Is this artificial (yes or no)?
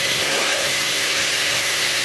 yes